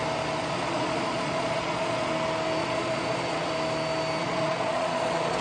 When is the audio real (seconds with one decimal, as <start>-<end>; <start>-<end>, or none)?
0.0-0.4; 2.1-2.6; 3.5-4.2

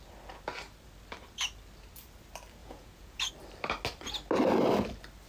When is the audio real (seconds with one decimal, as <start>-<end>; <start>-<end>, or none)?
0.0-2.6; 3.3-5.3